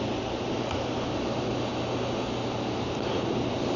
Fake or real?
real